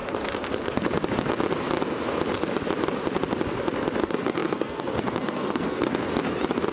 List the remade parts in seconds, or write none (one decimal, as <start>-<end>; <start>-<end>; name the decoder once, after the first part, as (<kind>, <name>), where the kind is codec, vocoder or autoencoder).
4.0-5.9 (codec, SNAC)

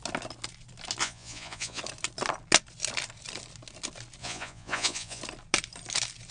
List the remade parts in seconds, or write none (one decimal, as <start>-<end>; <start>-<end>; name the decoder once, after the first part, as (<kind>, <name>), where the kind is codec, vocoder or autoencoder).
1.0-1.8 (vocoder, Vocos); 4.2-5.2

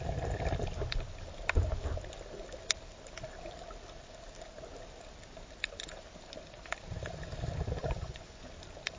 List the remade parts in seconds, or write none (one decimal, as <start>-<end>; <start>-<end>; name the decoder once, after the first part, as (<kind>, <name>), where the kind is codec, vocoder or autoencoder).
7.8-8.5 (vocoder, Vocos)

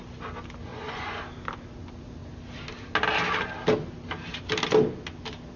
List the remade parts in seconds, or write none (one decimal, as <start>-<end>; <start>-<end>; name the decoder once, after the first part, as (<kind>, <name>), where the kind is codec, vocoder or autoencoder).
0.7-1.2 (vocoder, Vocos)

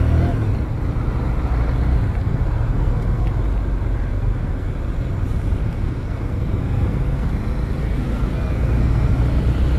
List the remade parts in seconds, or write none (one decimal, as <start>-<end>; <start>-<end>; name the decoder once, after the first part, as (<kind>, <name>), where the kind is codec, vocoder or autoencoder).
2.2-3.3 (codec, SNAC); 4.1-4.7; 5.6-7.3; 7.8-9.1

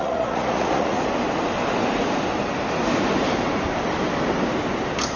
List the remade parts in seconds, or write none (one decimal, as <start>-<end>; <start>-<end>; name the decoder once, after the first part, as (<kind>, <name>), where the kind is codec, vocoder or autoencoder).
0.0-1.0 (vocoder, Vocos)

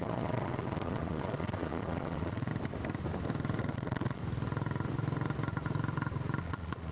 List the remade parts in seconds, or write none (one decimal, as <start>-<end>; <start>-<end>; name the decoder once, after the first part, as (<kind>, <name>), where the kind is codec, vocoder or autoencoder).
0.0-2.5 (vocoder, Vocos); 3.6-4.2; 6.4-6.9

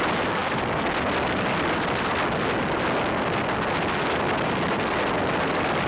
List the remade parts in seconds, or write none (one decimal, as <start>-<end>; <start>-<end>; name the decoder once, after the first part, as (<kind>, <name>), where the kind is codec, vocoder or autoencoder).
none